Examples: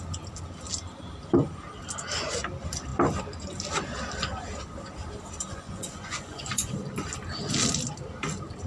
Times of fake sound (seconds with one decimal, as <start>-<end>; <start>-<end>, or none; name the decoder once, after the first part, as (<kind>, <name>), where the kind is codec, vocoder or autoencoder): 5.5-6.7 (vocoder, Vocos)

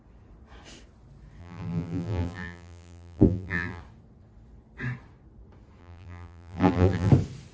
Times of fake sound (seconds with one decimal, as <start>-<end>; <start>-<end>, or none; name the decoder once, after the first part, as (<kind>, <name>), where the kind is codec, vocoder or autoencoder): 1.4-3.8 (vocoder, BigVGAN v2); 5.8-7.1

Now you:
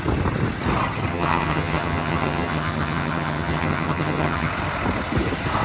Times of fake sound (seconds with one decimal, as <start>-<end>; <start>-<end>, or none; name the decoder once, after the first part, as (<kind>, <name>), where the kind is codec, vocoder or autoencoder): 1.1-4.5 (vocoder, HiFi-GAN)